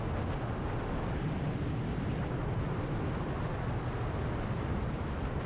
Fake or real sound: real